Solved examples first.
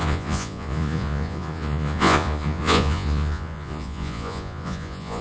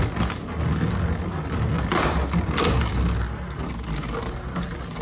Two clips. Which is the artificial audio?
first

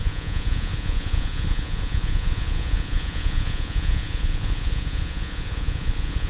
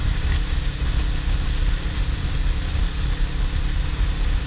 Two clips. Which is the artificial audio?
first